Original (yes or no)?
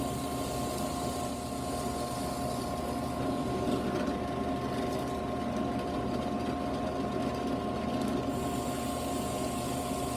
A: yes